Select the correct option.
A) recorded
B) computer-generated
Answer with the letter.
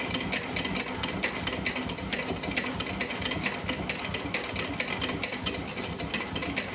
A